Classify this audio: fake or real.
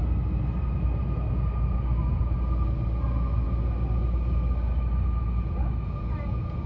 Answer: real